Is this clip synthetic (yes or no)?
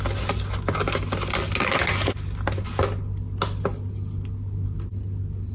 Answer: no